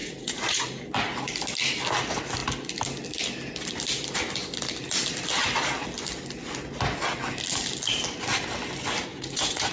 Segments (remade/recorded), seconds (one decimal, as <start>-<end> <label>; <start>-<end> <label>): 0.0-0.8 remade; 0.8-9.1 recorded; 9.1-9.7 remade